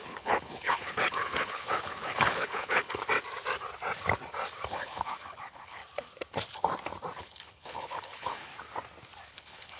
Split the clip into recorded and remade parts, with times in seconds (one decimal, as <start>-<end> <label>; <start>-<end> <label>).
0.0-3.0 remade; 3.0-4.7 recorded; 4.7-5.8 remade; 5.8-7.2 recorded; 7.2-8.5 remade; 8.5-9.3 recorded; 9.3-9.8 remade